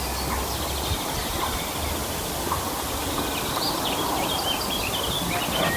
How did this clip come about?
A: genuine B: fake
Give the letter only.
A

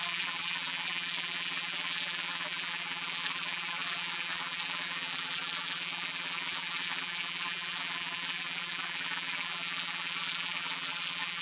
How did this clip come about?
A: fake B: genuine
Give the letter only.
A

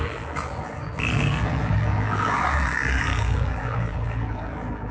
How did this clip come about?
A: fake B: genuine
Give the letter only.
A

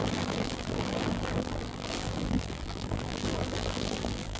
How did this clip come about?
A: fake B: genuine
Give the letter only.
A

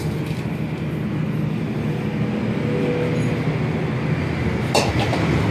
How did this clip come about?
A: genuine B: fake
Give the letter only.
A